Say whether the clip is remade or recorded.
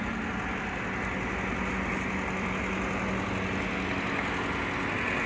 recorded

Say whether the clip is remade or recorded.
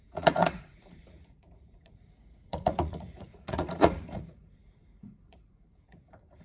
remade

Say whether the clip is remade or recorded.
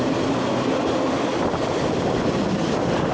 recorded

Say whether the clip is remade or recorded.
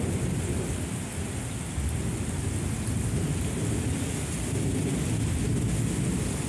recorded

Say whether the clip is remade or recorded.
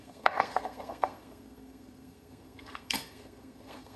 remade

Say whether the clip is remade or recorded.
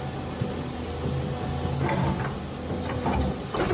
recorded